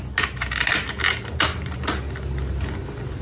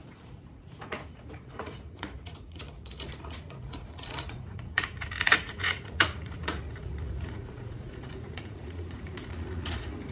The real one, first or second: first